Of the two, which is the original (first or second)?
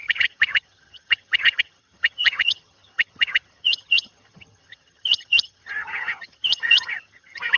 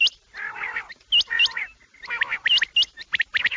second